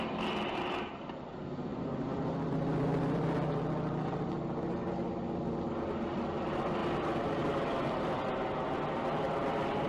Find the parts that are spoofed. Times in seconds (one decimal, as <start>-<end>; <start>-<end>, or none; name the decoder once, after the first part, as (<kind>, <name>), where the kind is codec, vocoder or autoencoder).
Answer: 1.7-3.6 (vocoder, BigVGAN v2); 6.8-8.1